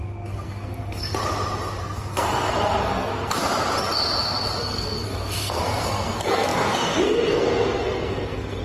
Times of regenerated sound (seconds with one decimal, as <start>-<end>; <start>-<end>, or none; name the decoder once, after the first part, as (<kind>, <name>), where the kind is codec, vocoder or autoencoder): 0.0-1.2 (codec, SNAC); 1.8-3.4; 4.6-8.6